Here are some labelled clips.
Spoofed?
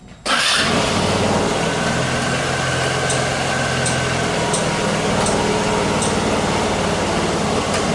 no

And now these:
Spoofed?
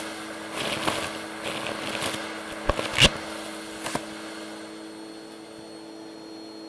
no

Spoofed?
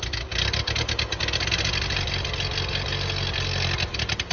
no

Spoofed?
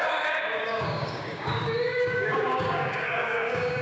yes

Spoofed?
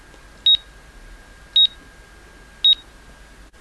no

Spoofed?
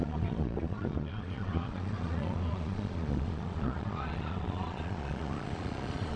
yes